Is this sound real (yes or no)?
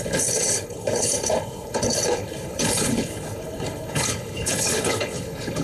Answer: no